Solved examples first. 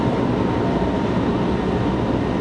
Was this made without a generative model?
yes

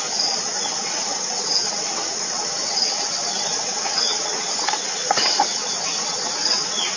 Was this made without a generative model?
no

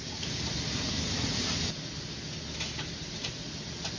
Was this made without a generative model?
yes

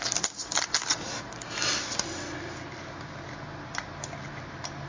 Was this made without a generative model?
yes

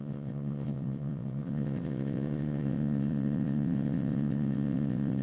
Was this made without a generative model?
no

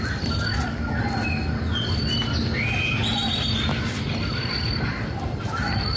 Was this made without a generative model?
yes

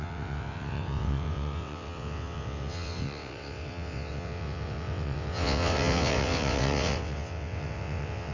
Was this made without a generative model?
no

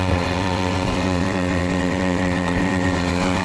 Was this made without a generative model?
no